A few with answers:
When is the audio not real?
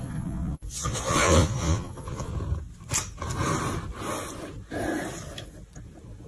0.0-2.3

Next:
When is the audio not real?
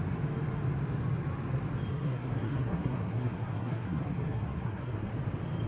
1.9-5.1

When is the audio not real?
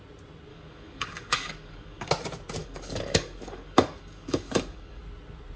0.5-2.1; 2.6-5.0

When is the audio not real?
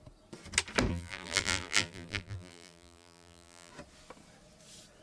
0.9-3.7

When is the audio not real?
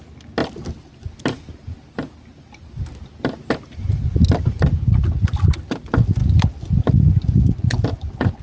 none